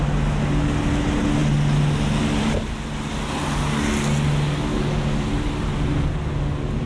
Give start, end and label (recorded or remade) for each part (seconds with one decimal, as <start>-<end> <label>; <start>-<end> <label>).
0.0-4.7 recorded; 4.7-5.5 remade; 5.5-6.9 recorded